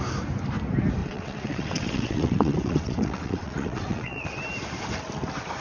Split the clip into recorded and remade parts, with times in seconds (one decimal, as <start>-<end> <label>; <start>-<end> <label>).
0.0-1.0 recorded; 1.0-4.4 remade; 4.4-5.6 recorded